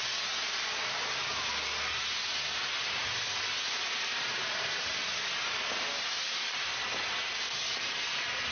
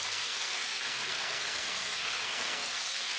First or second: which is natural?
first